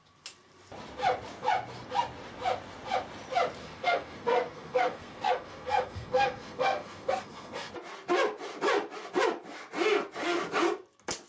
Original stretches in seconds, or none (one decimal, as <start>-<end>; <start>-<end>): 0.0-3.6; 7.7-11.3